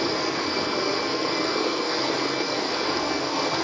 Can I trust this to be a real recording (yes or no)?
no